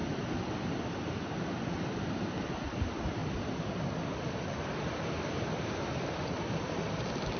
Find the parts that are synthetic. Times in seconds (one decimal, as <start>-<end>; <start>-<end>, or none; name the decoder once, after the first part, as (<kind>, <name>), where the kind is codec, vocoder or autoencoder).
none